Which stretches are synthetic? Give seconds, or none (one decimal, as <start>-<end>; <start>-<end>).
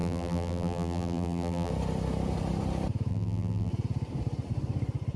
0.0-1.7; 3.1-3.7